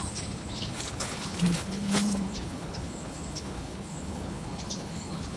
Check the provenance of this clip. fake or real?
fake